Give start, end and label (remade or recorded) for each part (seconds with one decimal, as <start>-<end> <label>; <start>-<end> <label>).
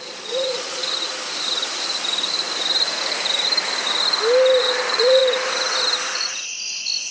0.0-0.8 remade; 0.8-4.6 recorded; 4.6-5.2 remade; 5.2-7.1 recorded